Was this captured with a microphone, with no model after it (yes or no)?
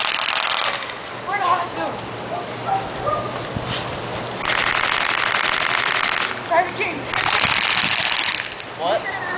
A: yes